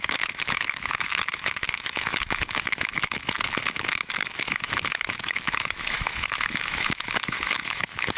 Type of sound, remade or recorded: remade